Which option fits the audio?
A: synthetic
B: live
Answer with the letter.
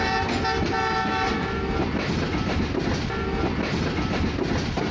B